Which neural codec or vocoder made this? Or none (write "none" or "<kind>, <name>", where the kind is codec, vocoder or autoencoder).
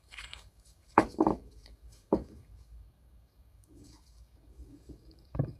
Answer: codec, DAC